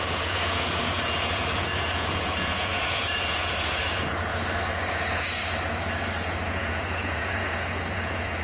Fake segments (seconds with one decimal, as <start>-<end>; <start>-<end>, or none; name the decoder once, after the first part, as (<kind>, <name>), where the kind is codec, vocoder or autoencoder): 0.0-4.3 (vocoder, Vocos); 4.9-5.4; 6.2-8.4